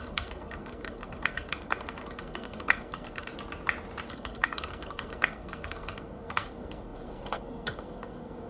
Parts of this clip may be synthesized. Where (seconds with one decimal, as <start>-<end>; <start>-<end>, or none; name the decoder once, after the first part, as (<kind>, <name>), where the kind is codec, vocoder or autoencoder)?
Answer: 0.0-3.3 (codec, SNAC); 4.1-8.5